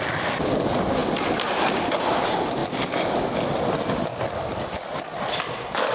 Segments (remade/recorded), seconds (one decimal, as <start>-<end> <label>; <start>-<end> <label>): 0.0-5.9 recorded